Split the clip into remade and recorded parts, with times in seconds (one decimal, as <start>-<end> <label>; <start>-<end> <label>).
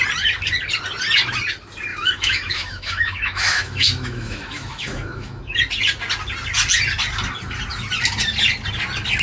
0.0-1.9 recorded; 1.9-5.6 remade; 5.6-9.2 recorded